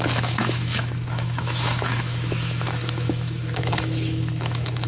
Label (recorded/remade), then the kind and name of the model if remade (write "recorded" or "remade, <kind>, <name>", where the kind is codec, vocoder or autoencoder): remade, autoencoder, DAC-VAE